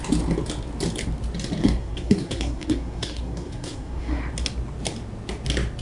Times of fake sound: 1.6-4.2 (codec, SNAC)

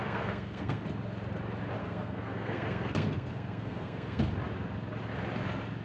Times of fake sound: 0.0-0.8 (codec, SNAC); 1.8-4.2